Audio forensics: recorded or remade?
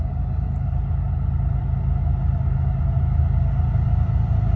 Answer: recorded